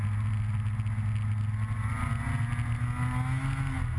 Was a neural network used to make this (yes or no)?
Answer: no